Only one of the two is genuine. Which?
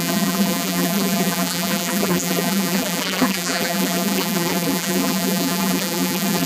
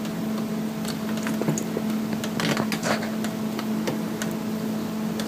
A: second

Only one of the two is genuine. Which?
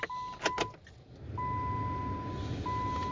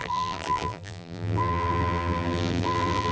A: first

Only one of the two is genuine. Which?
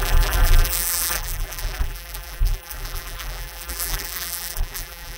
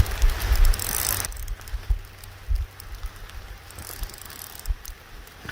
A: second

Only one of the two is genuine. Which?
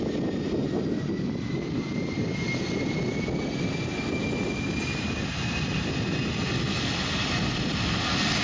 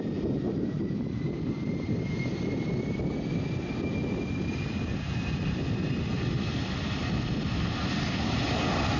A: first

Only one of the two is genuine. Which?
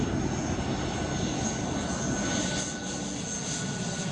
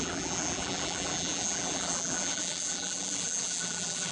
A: first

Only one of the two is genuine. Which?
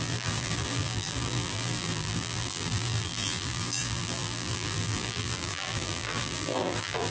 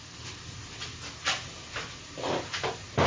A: second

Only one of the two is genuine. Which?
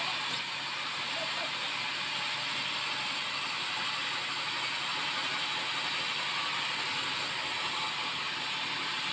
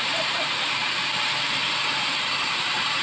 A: first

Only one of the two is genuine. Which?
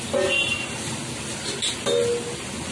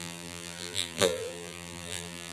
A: first